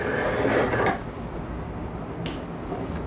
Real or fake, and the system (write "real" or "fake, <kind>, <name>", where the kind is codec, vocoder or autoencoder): real